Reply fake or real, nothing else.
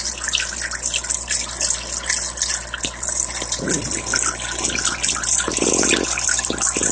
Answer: real